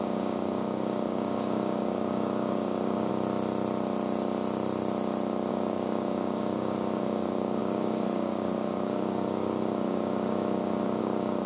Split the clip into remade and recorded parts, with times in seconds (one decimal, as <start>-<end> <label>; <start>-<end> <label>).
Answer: 0.0-3.1 remade; 3.1-5.5 recorded; 5.5-11.5 remade